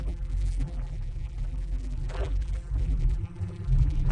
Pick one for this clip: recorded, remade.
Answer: remade